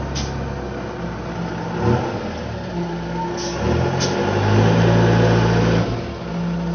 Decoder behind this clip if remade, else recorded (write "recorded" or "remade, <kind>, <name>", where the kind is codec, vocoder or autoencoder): recorded